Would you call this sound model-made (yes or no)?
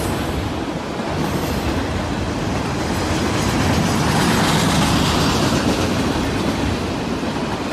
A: no